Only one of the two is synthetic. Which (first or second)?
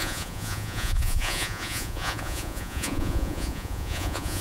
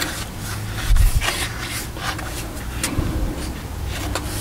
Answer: first